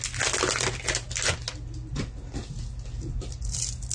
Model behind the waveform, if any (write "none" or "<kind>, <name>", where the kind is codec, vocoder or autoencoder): none